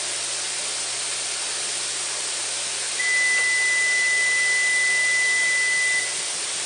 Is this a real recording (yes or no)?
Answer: yes